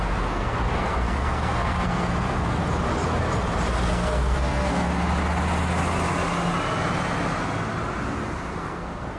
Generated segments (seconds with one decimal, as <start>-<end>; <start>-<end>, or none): 0.0-2.6; 3.9-4.9; 8.4-9.2